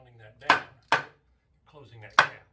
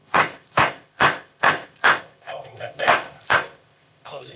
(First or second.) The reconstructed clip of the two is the second